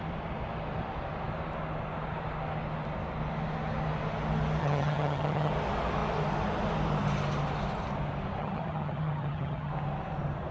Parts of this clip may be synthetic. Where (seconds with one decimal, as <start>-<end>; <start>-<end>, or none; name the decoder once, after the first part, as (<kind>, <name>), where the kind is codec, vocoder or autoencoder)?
4.6-5.5 (vocoder, HiFi-GAN); 8.4-9.7